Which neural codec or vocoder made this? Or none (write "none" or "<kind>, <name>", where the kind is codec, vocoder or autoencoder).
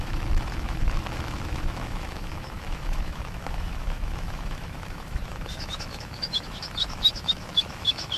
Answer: autoencoder, DAC-VAE